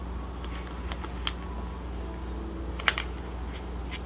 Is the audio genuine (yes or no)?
yes